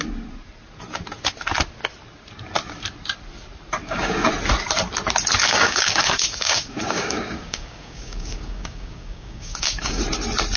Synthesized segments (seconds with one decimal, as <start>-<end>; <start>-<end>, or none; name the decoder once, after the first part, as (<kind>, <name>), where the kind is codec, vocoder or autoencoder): 3.8-4.3 (codec, DAC); 5.4-10.0